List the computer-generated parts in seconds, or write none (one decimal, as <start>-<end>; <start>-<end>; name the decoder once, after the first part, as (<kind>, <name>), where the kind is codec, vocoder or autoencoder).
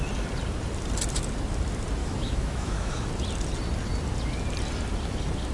2.0-3.1 (autoencoder, DAC-VAE)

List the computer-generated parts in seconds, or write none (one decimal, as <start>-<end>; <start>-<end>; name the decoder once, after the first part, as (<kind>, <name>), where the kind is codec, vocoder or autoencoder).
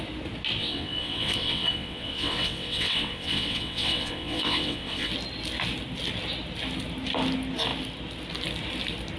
0.6-5.1 (vocoder, WaveNeXt)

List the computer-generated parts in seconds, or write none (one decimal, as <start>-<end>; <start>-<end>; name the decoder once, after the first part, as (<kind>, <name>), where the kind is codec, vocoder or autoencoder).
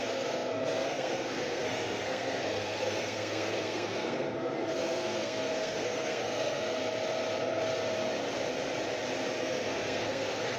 0.0-6.8 (codec, SNAC); 9.4-10.6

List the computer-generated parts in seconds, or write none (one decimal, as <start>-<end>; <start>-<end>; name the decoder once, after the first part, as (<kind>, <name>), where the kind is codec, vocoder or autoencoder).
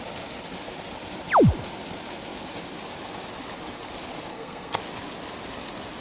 4.3-4.8 (codec, SNAC)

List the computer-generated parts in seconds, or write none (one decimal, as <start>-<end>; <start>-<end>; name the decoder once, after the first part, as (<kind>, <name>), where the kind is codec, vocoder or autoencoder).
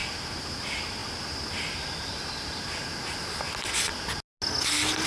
none